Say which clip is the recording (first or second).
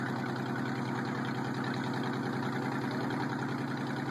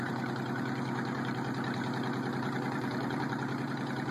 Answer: first